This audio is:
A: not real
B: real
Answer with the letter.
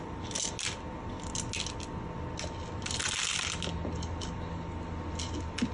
B